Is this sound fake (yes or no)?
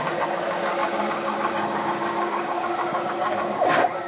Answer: yes